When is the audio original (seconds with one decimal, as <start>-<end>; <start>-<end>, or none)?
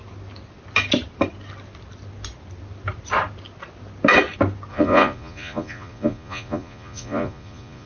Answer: 0.0-4.7